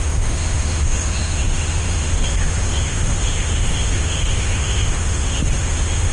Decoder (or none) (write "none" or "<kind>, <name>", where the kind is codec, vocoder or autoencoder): autoencoder, DAC-VAE